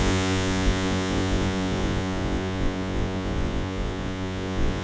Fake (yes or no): yes